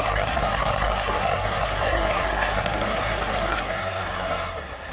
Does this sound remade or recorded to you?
remade